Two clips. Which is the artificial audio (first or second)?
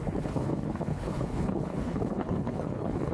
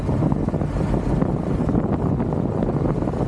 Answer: first